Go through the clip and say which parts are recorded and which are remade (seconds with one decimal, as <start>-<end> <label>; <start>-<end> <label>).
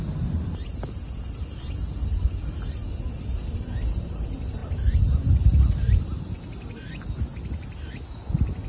0.0-8.7 recorded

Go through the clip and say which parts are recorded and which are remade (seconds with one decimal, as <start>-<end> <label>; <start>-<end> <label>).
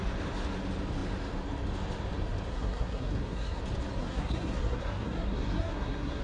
0.0-2.5 recorded; 2.5-3.6 remade; 3.6-4.0 recorded; 4.0-6.2 remade